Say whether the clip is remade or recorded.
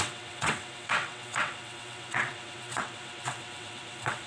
remade